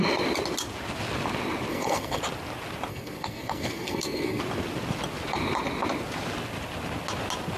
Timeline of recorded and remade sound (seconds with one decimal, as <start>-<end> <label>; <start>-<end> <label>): 0.0-1.7 recorded; 1.7-2.2 remade; 2.2-2.9 recorded; 2.9-4.4 remade; 4.4-7.6 recorded